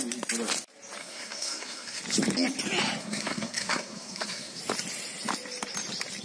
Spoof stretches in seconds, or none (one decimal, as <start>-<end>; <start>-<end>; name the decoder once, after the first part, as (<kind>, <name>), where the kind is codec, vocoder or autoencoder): 1.0-2.0 (codec, SNAC); 3.0-4.6